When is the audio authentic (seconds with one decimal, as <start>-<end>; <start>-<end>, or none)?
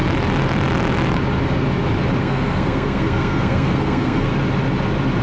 0.0-2.2; 4.3-5.2